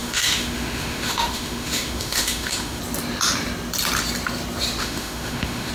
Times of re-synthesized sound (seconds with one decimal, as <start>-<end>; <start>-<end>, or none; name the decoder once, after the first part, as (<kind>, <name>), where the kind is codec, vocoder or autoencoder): 0.0-2.8 (autoencoder, DAC-VAE); 4.8-5.7